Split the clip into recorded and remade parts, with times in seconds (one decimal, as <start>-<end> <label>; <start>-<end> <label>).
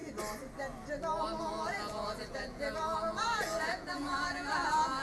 0.0-1.4 recorded; 1.4-5.0 remade